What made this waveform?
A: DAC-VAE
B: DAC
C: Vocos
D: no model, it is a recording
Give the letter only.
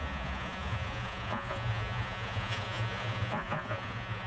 C